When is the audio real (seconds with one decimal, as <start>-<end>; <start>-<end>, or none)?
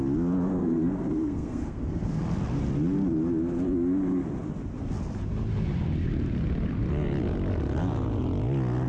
0.0-0.6; 2.2-8.9